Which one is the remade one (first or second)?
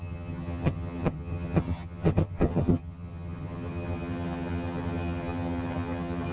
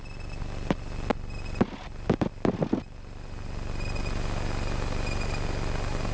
first